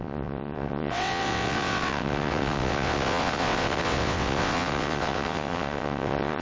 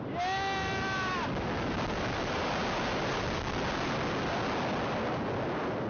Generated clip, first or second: first